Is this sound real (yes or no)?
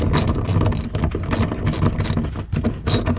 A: yes